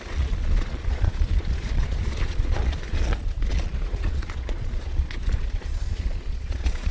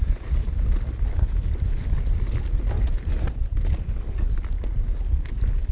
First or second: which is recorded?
second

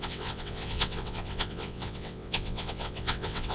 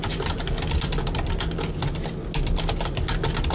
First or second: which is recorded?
second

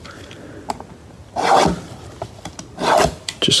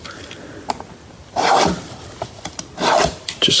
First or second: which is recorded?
first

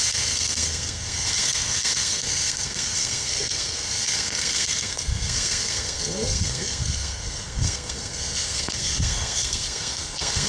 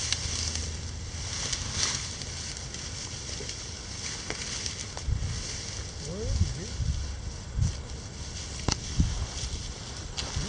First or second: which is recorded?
second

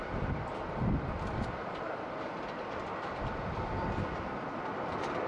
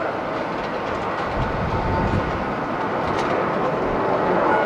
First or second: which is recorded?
second